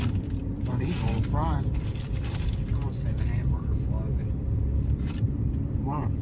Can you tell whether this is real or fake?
fake